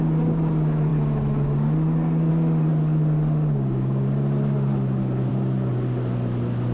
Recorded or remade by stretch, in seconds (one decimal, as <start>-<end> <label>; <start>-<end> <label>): 0.0-6.7 recorded